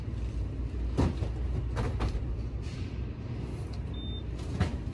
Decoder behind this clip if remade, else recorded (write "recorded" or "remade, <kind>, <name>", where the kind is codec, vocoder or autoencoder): recorded